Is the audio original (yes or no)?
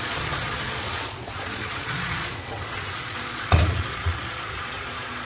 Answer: no